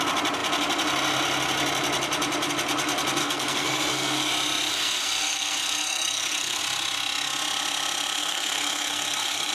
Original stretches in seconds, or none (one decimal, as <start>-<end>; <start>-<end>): 0.0-3.2; 4.3-4.7; 6.6-8.2